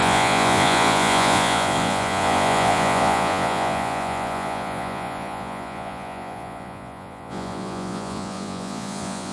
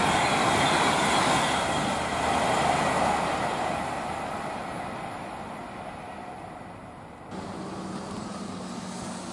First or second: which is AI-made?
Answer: first